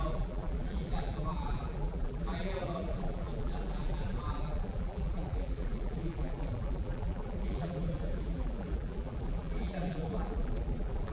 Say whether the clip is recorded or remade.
remade